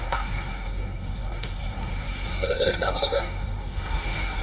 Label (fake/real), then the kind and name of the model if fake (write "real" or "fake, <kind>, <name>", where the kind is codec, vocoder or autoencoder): fake, codec, SNAC